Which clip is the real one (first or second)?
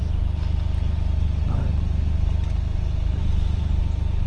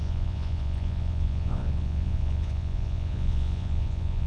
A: first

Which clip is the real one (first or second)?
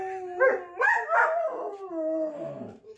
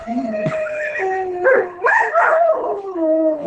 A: first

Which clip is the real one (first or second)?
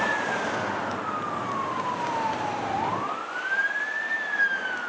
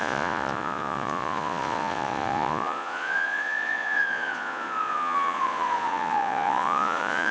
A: first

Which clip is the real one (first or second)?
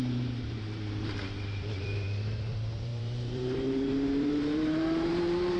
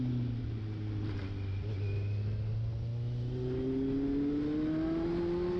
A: second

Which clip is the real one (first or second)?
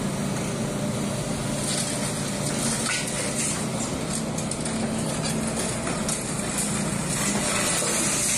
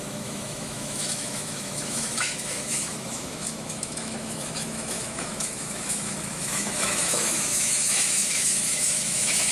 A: first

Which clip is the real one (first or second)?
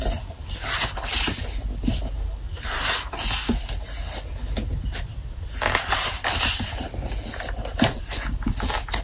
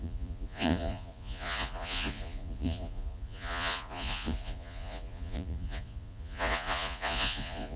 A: first